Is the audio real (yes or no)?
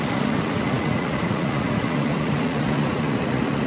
no